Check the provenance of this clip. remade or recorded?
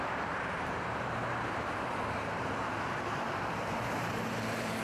remade